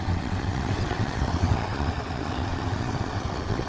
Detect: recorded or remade remade